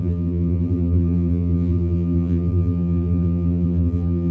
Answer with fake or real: fake